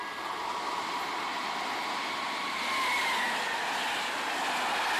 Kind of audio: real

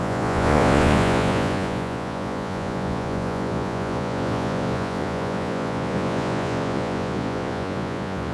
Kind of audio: fake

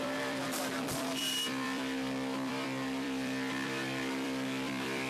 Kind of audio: fake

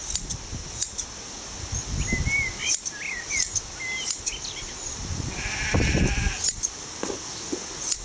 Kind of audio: real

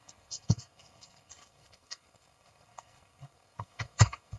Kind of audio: fake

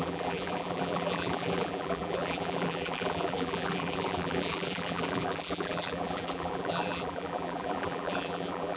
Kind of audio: fake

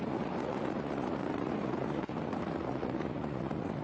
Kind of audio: fake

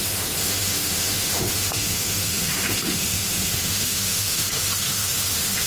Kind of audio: fake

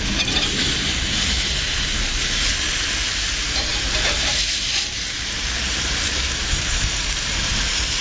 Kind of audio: fake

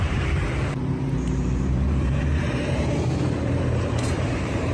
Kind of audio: fake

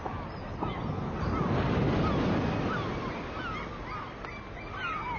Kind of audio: real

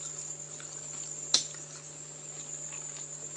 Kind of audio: real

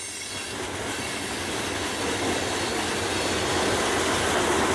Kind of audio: real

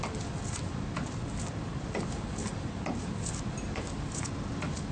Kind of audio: real